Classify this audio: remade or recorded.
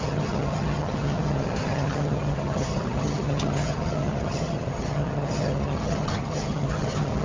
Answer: remade